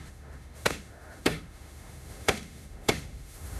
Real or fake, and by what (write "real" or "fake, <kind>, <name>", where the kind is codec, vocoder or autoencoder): fake, autoencoder, DAC-VAE